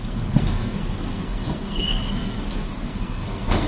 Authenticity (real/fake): fake